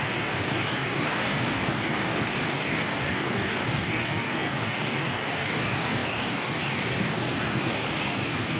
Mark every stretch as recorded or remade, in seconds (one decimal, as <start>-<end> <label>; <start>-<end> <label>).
0.0-8.6 remade

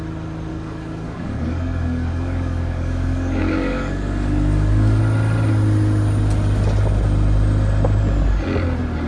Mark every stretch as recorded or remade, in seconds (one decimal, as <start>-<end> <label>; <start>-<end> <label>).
0.0-0.5 recorded; 0.5-5.0 remade; 5.0-9.1 recorded

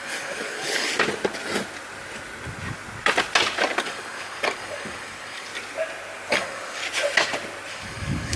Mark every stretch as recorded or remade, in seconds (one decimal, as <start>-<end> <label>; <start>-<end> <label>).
0.0-0.9 remade; 0.9-3.8 recorded; 3.8-5.5 remade; 5.5-6.3 recorded; 6.3-6.8 remade; 6.8-7.7 recorded; 7.7-8.4 remade

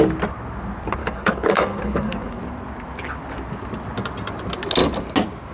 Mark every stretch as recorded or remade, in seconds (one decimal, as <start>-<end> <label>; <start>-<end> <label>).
0.0-1.0 recorded; 1.0-2.4 remade; 2.4-5.5 recorded

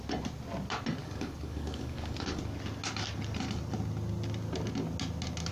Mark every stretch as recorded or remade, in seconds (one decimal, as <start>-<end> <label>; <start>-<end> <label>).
0.0-1.0 recorded; 1.0-2.4 remade; 2.4-5.5 recorded